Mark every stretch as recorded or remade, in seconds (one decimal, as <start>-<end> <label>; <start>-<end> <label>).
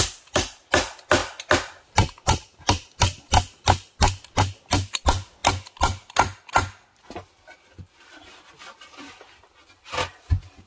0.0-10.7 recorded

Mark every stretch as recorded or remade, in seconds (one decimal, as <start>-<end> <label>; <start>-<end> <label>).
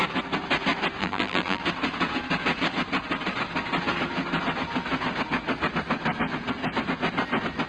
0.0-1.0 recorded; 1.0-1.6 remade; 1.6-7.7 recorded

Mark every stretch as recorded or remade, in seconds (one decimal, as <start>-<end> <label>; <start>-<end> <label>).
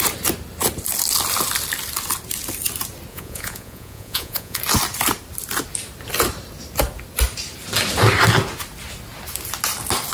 0.0-3.1 recorded; 3.1-4.6 remade; 4.6-10.1 recorded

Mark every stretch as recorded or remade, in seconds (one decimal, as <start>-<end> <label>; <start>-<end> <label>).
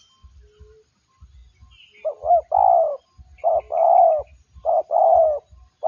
0.0-5.9 recorded